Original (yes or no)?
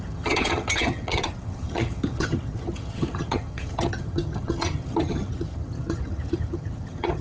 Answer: no